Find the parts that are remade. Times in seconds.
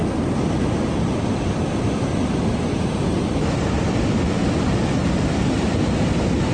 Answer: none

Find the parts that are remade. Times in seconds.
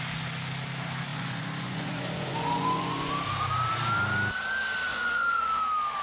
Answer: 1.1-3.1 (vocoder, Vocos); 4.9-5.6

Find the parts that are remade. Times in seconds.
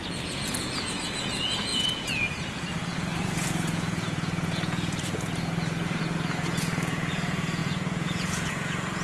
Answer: 0.0-9.0 (vocoder, Vocos)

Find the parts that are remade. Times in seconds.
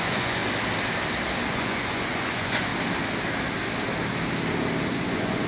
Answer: 0.0-0.4 (vocoder, Vocos); 1.5-2.7; 4.9-5.5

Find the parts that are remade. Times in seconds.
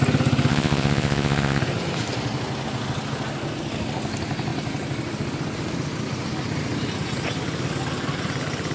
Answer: 0.5-1.6 (vocoder, Vocos)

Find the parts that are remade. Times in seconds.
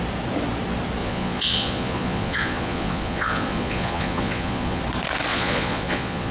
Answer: 1.0-4.8 (vocoder, Vocos); 5.3-6.3